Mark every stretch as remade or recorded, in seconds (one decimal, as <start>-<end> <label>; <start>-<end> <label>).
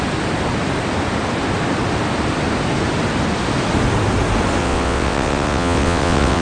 0.0-4.6 recorded; 4.6-6.4 remade